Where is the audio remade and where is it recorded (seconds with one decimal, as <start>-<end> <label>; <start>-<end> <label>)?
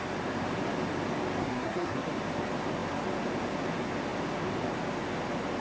0.0-1.4 recorded; 1.4-2.1 remade; 2.1-5.6 recorded